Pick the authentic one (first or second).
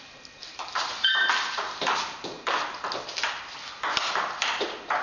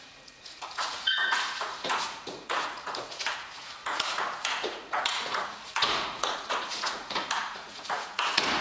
first